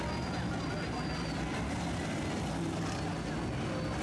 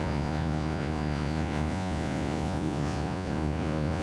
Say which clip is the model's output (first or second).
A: second